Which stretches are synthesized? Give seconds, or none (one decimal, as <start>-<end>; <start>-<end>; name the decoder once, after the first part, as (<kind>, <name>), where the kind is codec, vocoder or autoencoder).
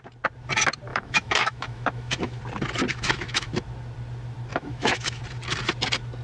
0.9-2.4 (autoencoder, DAC-VAE); 2.9-3.5; 4.5-5.2